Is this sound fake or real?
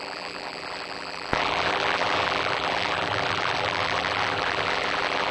fake